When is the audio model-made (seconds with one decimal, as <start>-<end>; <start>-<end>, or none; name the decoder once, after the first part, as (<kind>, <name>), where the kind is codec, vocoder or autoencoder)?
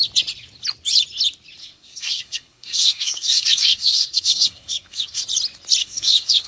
1.6-5.2 (codec, SNAC); 5.8-6.5